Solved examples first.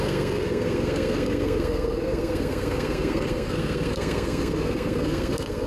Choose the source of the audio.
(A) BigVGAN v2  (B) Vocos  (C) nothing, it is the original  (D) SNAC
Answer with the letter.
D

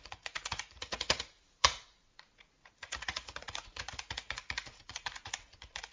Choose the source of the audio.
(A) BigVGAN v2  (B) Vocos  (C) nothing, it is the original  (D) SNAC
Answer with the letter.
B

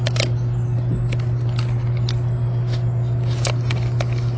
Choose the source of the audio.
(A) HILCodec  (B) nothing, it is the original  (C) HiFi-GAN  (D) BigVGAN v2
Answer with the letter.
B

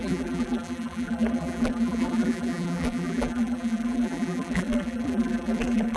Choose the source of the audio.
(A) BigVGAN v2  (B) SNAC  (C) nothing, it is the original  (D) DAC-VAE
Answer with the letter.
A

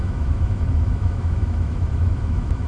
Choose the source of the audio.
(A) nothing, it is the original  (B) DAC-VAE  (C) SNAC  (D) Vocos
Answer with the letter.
B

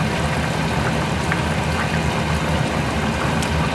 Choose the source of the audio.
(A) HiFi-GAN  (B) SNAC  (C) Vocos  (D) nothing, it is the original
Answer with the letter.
D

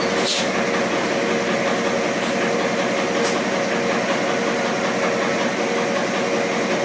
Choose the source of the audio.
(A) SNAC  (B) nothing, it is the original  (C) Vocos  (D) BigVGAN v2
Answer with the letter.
B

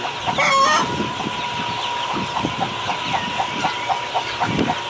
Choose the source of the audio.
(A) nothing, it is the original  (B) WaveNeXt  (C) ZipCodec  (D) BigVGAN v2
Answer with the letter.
A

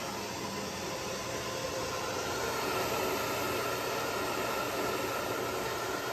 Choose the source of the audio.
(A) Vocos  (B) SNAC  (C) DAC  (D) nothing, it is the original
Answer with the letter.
D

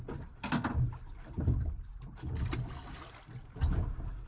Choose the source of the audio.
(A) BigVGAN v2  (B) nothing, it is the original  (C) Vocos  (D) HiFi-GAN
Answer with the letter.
B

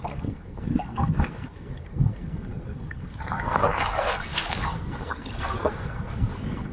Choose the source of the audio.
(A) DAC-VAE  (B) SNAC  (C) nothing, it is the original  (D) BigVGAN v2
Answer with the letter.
B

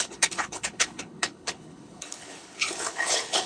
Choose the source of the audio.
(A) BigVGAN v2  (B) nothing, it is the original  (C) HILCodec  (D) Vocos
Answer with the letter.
C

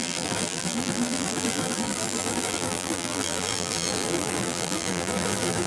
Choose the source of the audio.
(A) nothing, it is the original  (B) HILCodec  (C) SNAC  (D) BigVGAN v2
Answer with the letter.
D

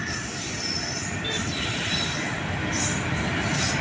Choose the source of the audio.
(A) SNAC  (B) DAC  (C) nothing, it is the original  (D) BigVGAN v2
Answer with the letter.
D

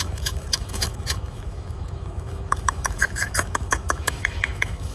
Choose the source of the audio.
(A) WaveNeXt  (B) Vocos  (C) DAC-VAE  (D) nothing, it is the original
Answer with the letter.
C